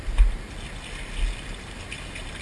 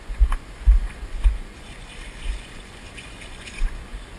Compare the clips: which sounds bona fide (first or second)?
first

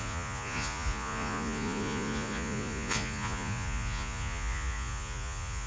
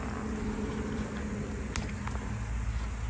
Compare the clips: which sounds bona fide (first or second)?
second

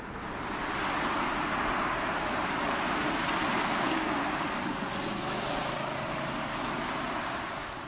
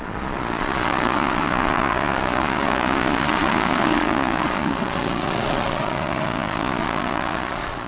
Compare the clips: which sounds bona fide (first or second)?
first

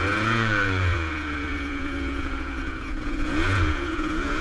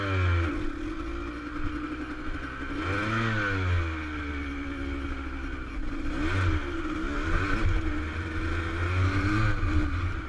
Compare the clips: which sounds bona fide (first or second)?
second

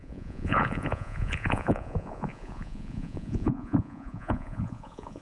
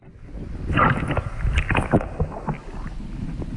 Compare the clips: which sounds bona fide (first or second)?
second